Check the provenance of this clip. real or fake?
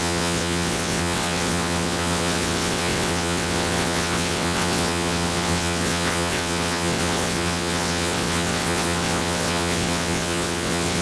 fake